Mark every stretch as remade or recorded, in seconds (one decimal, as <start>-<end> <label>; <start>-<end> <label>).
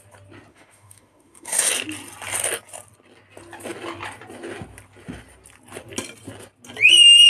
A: 0.0-0.5 recorded; 0.5-1.7 remade; 1.7-7.3 recorded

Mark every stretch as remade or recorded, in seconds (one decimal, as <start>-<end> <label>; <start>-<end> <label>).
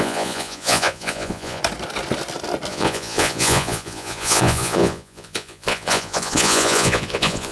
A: 0.0-1.6 remade; 1.6-2.7 recorded; 2.7-7.5 remade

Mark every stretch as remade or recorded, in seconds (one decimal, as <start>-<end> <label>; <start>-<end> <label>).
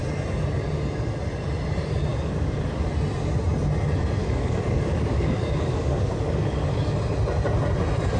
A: 0.0-2.1 recorded; 2.1-2.9 remade; 2.9-4.2 recorded; 4.2-6.9 remade; 6.9-8.2 recorded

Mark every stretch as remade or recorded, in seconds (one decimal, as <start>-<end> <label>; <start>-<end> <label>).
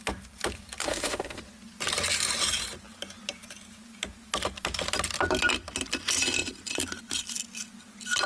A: 0.0-0.8 recorded; 0.8-1.4 remade; 1.4-8.3 recorded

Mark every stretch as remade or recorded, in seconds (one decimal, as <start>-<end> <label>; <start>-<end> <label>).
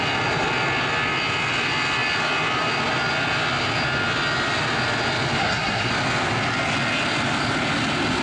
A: 0.0-5.4 recorded; 5.4-5.9 remade; 5.9-8.2 recorded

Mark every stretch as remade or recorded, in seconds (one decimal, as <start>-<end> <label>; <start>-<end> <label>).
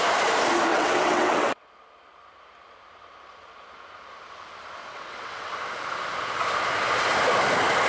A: 0.0-0.7 recorded; 0.7-1.7 remade; 1.7-4.9 recorded; 4.9-5.5 remade; 5.5-7.9 recorded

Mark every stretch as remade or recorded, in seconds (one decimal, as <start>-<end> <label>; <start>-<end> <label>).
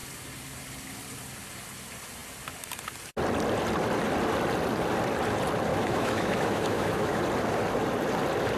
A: 0.0-5.7 recorded; 5.7-7.2 remade; 7.2-8.6 recorded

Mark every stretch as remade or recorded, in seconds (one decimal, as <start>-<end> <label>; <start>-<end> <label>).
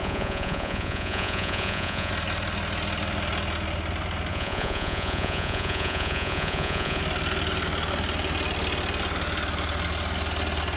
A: 0.0-2.1 remade; 2.1-4.3 recorded; 4.3-7.0 remade; 7.0-10.8 recorded